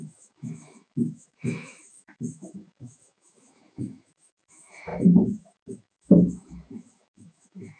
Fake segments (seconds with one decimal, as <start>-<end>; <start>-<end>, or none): 0.0-7.8